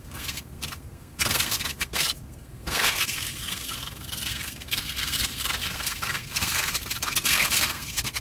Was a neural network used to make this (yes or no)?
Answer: yes